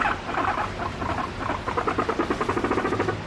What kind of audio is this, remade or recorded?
recorded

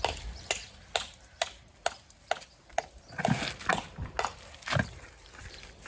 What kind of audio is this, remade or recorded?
recorded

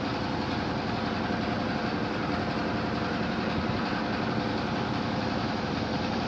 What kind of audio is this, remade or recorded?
recorded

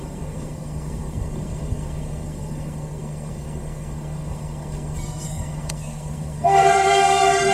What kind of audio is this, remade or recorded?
remade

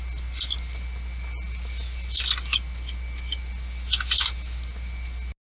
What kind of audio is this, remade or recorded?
recorded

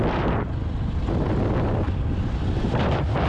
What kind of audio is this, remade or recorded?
recorded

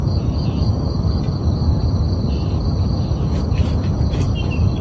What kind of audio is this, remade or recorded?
recorded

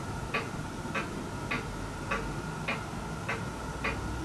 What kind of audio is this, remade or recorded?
recorded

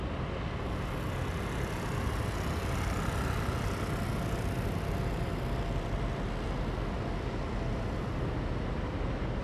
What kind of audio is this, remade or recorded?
recorded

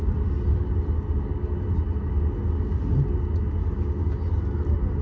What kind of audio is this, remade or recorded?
recorded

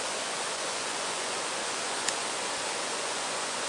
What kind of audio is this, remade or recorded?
remade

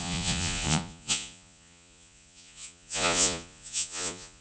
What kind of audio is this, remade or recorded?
remade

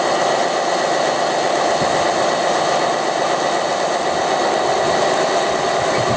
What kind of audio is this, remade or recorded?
recorded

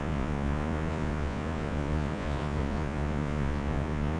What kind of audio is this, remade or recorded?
remade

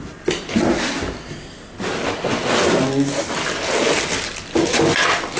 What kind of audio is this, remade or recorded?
recorded